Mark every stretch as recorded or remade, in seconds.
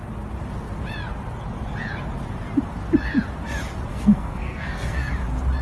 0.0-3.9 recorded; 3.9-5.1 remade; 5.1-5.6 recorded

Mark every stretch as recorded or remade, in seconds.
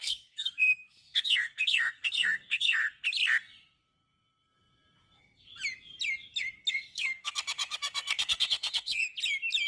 0.0-2.8 remade; 2.8-6.7 recorded; 6.7-9.0 remade; 9.0-9.7 recorded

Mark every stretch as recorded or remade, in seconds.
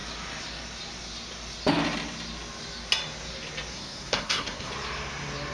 0.0-3.7 recorded; 3.7-4.7 remade; 4.7-5.5 recorded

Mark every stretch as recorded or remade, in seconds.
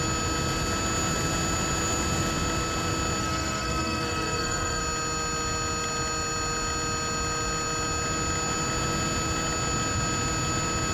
0.0-3.2 recorded; 3.2-4.8 remade; 4.8-10.9 recorded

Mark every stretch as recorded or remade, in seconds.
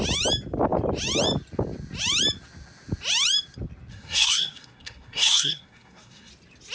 0.0-3.9 recorded; 3.9-6.3 remade; 6.3-6.7 recorded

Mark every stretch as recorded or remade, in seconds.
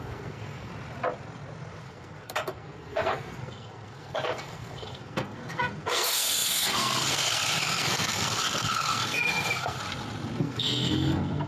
0.0-0.7 remade; 0.7-1.8 recorded; 1.8-9.8 remade; 9.8-10.4 recorded; 10.4-11.5 remade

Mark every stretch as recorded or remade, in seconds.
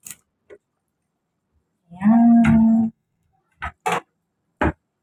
0.0-2.8 recorded; 2.8-3.4 remade; 3.4-5.0 recorded